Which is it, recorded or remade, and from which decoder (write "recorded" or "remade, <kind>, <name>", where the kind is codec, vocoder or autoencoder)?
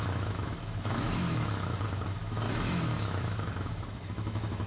remade, autoencoder, DAC-VAE